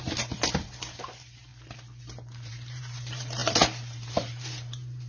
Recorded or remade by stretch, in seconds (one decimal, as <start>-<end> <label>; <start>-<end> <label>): 0.0-1.5 remade; 1.5-2.0 recorded; 2.0-5.1 remade